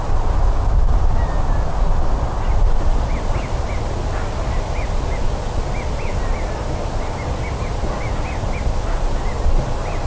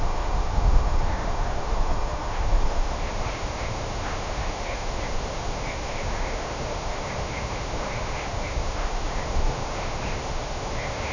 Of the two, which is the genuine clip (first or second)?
first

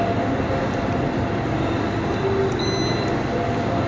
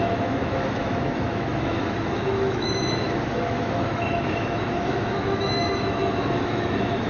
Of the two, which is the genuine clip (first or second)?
first